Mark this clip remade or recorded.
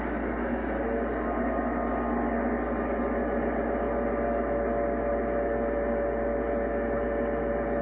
recorded